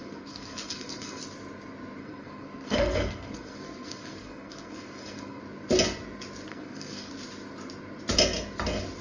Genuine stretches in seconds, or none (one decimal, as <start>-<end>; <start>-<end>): 1.2-2.0; 5.4-6.5; 7.1-9.0